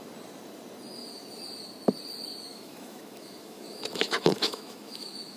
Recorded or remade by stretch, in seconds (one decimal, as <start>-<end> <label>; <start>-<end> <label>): 0.0-2.5 recorded; 2.5-5.4 remade